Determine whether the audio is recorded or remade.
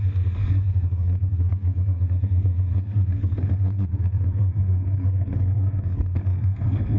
remade